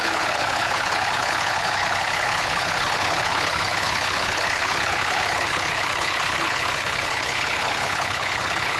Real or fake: fake